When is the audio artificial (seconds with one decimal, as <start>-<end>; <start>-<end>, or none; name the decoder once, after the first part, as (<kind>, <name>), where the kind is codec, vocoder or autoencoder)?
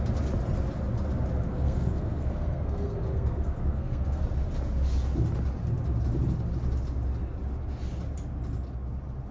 1.5-4.2 (codec, SNAC)